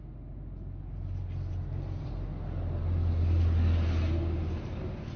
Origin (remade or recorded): recorded